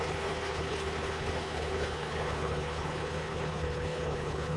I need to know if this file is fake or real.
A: fake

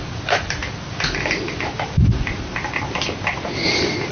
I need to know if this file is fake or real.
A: real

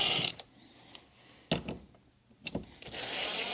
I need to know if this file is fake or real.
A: real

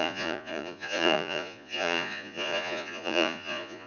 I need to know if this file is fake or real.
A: fake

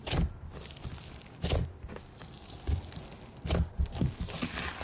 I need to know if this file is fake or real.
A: real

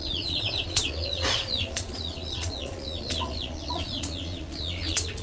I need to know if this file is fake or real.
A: fake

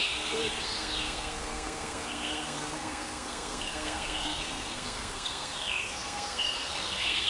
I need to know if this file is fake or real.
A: fake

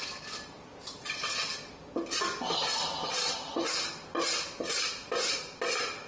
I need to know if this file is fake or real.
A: real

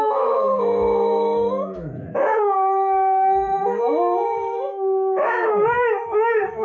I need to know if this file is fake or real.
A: fake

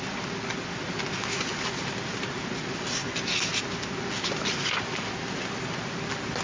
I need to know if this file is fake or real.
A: real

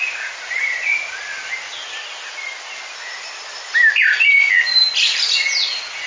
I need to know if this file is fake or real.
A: real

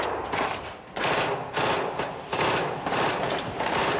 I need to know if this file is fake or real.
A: real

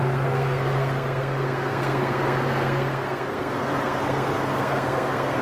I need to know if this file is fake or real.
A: fake